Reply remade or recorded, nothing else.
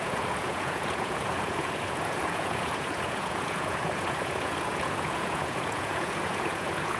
remade